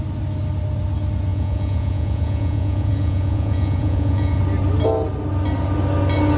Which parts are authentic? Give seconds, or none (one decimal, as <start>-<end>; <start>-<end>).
0.0-1.3; 4.4-6.4